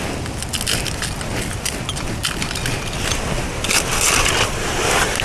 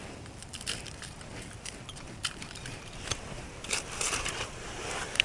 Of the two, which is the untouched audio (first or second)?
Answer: first